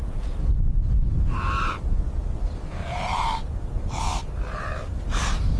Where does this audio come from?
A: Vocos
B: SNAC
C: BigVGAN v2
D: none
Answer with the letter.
D